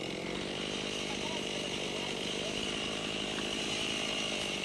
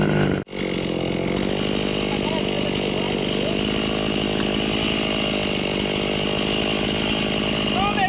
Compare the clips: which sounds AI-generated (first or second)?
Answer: first